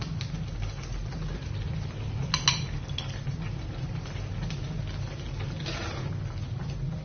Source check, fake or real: real